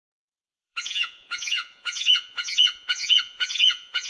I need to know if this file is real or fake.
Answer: fake